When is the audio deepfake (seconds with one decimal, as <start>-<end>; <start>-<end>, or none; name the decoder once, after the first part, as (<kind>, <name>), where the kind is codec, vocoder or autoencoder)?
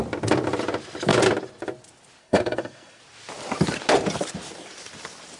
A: 2.2-3.0 (codec, SNAC)